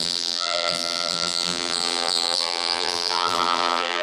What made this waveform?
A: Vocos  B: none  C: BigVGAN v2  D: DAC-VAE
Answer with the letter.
C